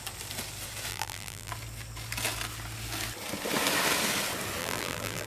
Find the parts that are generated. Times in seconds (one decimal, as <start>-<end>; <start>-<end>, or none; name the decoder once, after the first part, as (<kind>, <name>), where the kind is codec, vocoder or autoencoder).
0.9-1.5 (vocoder, BigVGAN v2); 4.6-5.3